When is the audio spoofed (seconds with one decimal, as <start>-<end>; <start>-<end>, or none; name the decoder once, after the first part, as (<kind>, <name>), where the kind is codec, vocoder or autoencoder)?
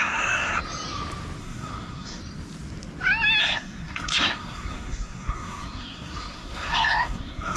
0.0-0.6 (codec, SNAC); 1.4-2.2; 3.4-7.6